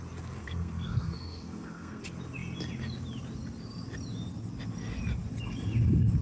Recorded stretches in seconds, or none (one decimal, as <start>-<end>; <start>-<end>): 0.0-0.4; 2.0-6.2